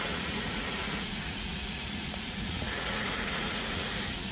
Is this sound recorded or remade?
remade